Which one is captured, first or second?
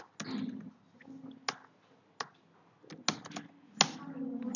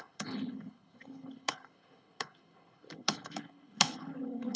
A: first